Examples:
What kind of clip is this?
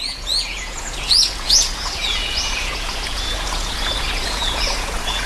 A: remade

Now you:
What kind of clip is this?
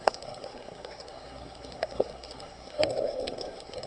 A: remade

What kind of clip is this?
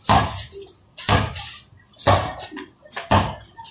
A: recorded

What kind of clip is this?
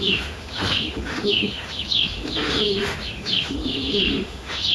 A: remade